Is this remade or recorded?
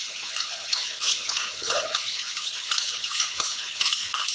remade